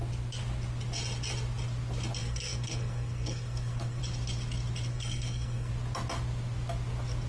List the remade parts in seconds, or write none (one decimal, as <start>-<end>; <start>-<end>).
2.2-4.0; 4.9-5.7